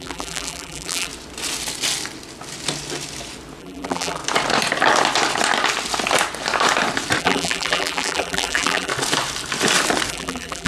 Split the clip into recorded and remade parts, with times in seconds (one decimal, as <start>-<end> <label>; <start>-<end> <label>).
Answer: 0.0-1.1 remade; 1.1-3.6 recorded; 3.6-4.2 remade; 4.2-7.2 recorded; 7.2-8.9 remade; 8.9-10.1 recorded; 10.1-10.7 remade